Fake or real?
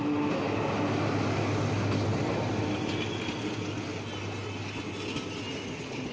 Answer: real